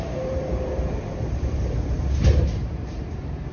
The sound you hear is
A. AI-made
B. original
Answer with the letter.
A